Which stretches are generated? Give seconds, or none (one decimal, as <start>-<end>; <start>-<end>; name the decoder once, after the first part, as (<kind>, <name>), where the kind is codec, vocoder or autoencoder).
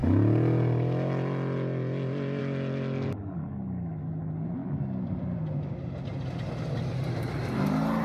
4.6-5.4 (vocoder, BigVGAN v2)